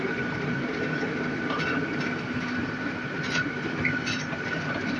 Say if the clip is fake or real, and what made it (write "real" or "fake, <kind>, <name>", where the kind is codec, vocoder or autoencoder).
fake, vocoder, BigVGAN v2